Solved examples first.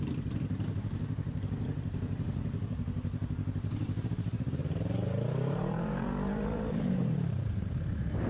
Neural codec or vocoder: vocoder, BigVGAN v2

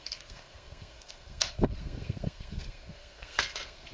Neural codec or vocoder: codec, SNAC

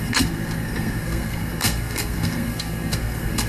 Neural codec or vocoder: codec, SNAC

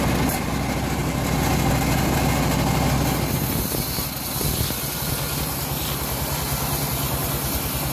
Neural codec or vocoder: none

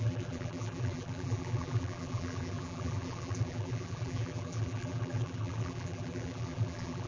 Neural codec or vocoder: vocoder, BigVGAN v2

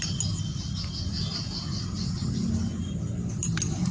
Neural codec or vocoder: none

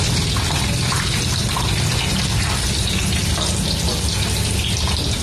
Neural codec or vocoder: none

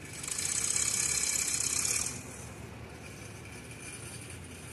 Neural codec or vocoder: none